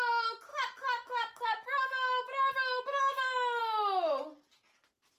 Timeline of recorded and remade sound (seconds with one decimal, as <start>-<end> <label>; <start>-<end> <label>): 0.0-0.5 recorded; 0.5-3.6 remade; 3.6-5.2 recorded